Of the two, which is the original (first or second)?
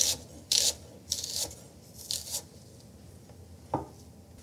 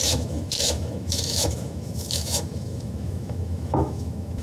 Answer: first